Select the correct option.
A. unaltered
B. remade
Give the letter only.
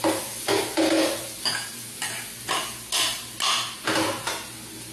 A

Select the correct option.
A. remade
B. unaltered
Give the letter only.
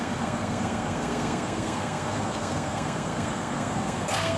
A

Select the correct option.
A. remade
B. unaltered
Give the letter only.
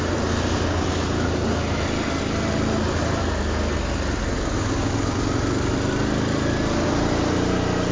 B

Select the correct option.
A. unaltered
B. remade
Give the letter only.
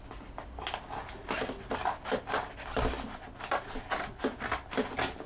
A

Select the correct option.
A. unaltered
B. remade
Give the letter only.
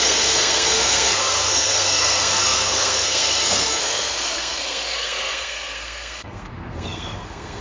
B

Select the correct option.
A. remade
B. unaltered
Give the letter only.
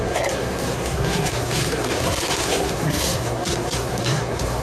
A